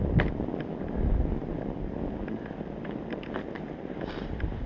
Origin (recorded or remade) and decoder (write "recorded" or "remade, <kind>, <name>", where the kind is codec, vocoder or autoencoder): recorded